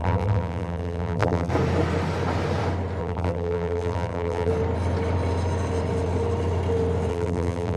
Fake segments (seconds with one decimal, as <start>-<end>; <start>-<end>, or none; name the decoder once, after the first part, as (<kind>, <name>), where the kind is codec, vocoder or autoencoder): 0.0-1.5 (vocoder, BigVGAN v2); 3.0-4.5; 7.1-7.8